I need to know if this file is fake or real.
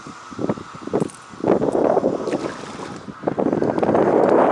real